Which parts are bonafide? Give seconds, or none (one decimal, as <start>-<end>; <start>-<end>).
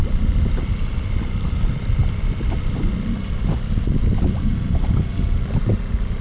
3.5-6.2